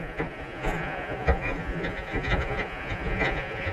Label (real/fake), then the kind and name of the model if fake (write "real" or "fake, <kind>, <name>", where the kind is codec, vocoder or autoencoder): fake, vocoder, Vocos